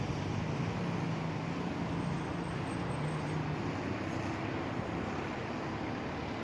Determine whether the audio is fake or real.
real